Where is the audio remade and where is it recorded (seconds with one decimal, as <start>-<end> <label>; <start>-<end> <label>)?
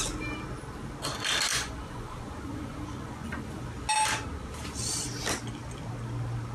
0.0-1.5 recorded; 1.5-3.6 remade; 3.6-6.5 recorded